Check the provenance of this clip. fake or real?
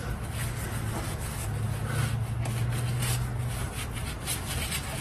real